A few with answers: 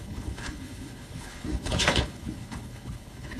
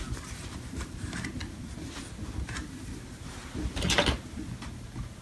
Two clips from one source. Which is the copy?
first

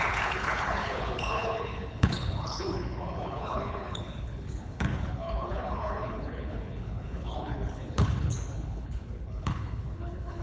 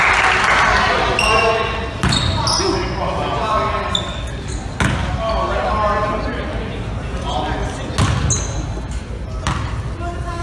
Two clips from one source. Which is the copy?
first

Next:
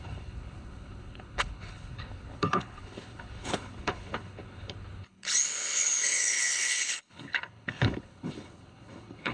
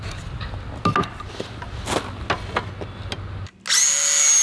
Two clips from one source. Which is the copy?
first